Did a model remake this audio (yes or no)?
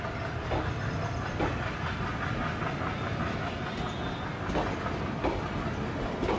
no